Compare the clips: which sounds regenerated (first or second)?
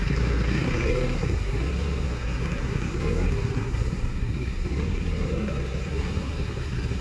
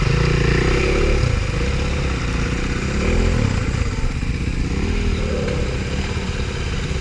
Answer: first